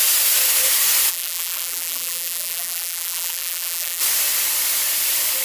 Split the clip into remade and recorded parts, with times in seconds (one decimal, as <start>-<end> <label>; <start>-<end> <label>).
0.0-1.1 recorded; 1.1-4.0 remade; 4.0-5.4 recorded